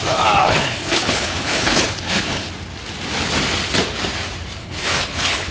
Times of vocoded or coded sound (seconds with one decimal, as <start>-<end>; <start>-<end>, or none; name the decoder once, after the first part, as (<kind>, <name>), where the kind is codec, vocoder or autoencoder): 0.4-2.5 (codec, HILCodec); 4.6-5.5